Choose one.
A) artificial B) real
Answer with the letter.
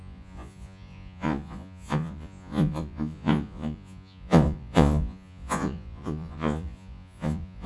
A